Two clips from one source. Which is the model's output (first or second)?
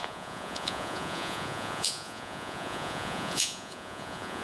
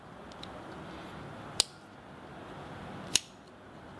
first